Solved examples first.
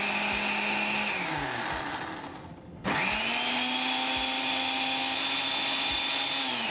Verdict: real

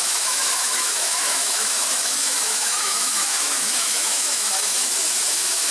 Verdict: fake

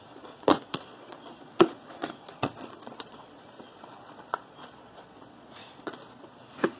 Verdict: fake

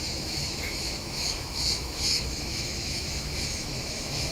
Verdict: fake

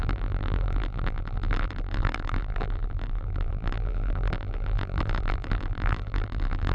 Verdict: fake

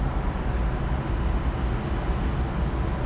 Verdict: real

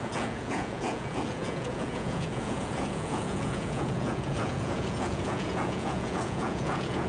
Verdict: fake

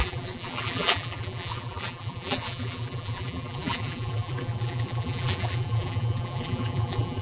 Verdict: fake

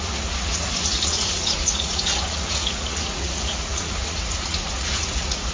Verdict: fake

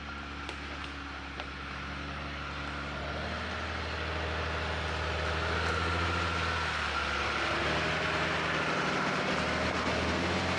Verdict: real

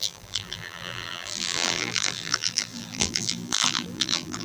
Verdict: fake